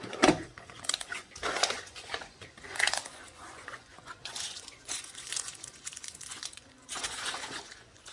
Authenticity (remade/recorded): remade